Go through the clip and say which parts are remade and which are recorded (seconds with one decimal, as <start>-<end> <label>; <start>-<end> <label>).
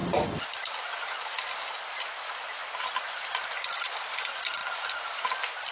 0.0-5.7 recorded